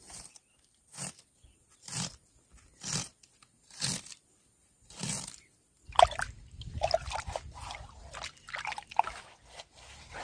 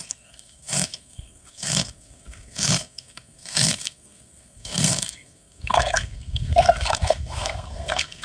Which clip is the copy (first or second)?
second